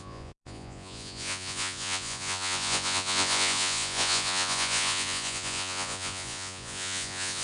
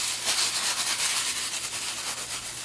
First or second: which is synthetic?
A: first